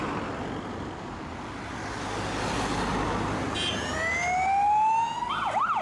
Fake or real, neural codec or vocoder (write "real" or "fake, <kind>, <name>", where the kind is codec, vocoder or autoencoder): real